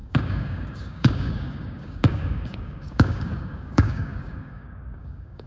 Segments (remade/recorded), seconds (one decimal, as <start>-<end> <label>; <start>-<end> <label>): 0.0-5.5 remade